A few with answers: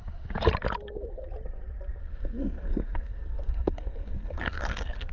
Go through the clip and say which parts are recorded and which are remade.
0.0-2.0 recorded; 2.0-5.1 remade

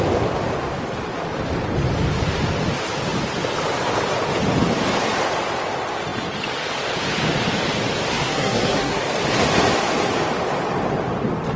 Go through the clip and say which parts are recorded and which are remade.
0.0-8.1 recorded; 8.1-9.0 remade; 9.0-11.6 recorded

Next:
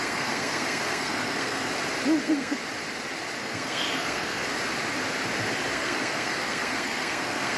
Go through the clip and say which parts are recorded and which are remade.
0.0-1.7 remade; 1.7-2.2 recorded; 2.2-2.6 remade; 2.6-3.4 recorded; 3.4-4.5 remade; 4.5-5.7 recorded; 5.7-7.6 remade

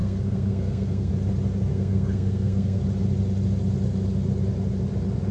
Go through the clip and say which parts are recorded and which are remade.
0.0-1.1 remade; 1.1-1.7 recorded; 1.7-2.8 remade; 2.8-5.3 recorded

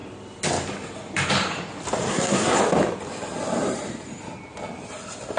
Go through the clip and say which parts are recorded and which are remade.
0.0-2.1 recorded; 2.1-2.6 remade; 2.6-5.4 recorded